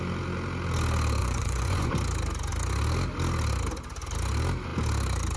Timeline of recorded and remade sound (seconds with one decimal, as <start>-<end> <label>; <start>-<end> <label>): 0.0-1.2 recorded; 1.2-1.9 remade; 1.9-5.4 recorded